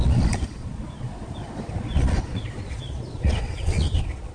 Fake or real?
fake